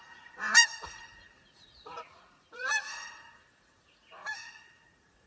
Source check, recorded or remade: remade